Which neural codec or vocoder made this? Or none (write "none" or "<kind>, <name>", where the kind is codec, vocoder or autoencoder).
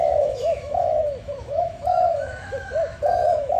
autoencoder, DAC-VAE